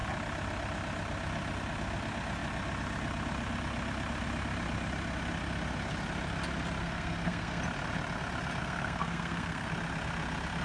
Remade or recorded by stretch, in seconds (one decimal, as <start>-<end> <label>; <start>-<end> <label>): 0.0-6.8 recorded; 6.8-7.6 remade; 7.6-8.6 recorded; 8.6-9.7 remade; 9.7-10.6 recorded